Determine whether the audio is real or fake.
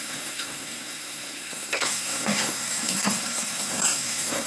fake